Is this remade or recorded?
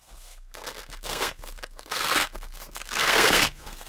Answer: remade